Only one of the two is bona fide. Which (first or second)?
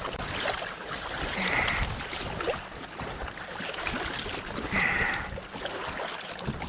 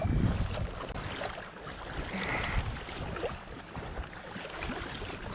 first